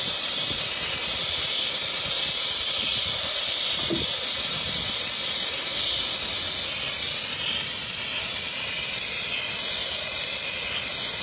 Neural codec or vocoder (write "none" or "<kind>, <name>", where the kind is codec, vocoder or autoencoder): vocoder, BigVGAN v2